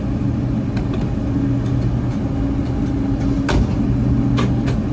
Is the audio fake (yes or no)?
no